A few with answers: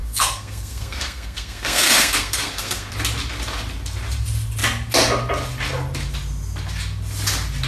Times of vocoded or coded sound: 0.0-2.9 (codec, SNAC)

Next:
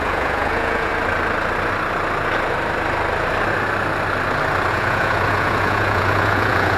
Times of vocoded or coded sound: 0.0-0.9 (vocoder, Vocos); 4.7-6.8

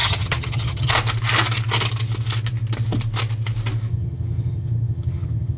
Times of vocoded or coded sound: 0.0-0.9 (vocoder, HiFi-GAN); 3.9-5.6

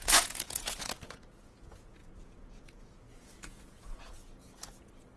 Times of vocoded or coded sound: 0.0-5.2 (vocoder, Vocos)

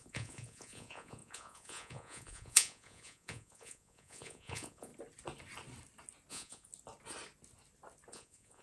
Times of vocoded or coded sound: 0.0-4.9 (vocoder, Vocos); 6.3-6.7; 8.1-8.6

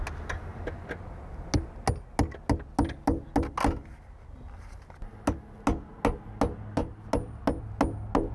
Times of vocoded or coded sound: none

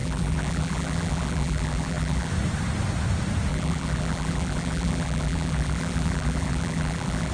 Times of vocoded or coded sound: 0.0-2.3 (vocoder, BigVGAN v2); 3.5-7.3